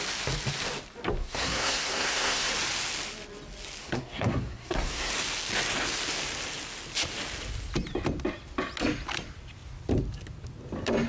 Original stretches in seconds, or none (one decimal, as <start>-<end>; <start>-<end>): 0.0-1.2; 2.5-3.8; 5.1-11.1